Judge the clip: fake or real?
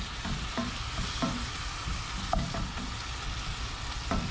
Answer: real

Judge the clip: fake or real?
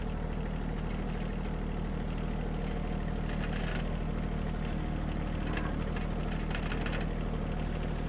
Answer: real